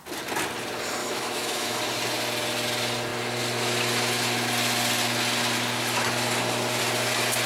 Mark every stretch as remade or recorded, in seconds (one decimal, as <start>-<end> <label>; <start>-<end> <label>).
0.0-1.0 recorded; 1.0-1.8 remade; 1.8-7.5 recorded